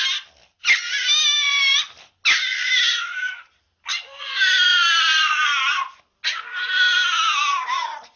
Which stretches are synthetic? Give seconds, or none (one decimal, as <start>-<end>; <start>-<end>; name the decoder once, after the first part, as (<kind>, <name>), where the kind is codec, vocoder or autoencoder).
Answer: none